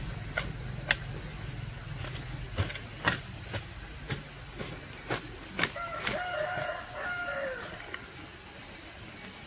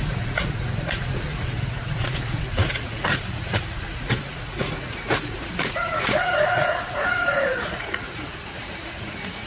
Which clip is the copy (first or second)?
second